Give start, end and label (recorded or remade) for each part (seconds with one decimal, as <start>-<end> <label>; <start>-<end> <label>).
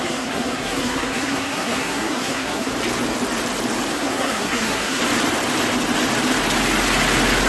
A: 0.0-2.7 remade; 2.7-3.9 recorded; 3.9-5.0 remade; 5.0-7.5 recorded